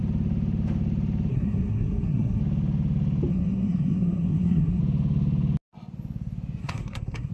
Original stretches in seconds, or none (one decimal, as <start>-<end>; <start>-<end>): 0.0-1.3; 2.4-3.3; 4.8-6.6